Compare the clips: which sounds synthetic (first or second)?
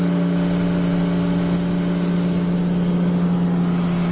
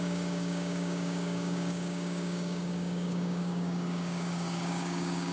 second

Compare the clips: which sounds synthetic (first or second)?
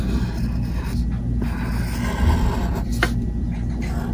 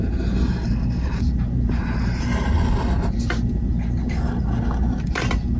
second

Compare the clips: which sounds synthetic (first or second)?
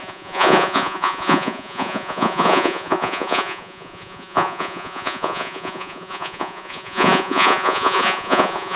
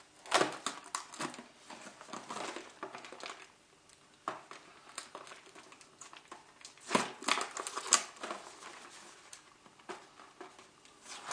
first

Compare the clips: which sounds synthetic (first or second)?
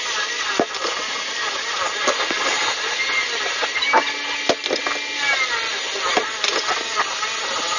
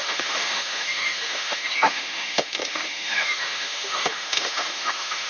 second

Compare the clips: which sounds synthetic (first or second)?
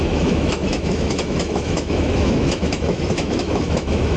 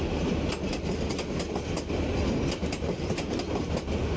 first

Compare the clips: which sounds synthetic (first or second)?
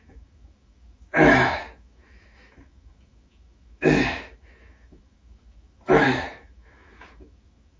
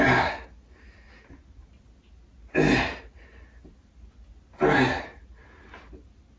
first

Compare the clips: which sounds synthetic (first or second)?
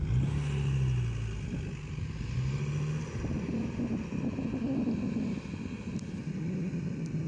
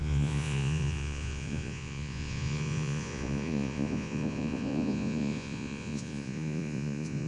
second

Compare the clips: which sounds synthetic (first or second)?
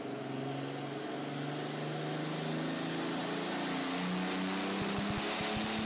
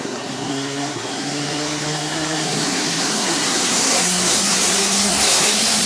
second